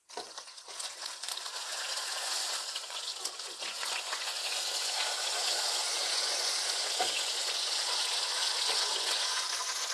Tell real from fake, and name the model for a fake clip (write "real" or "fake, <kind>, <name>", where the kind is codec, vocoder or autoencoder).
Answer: fake, vocoder, Vocos